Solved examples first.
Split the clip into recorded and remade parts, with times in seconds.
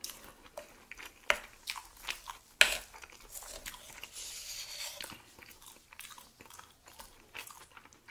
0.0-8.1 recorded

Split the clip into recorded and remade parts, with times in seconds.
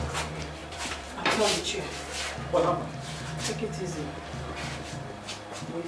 0.0-0.6 recorded; 0.6-1.8 remade; 1.8-5.9 recorded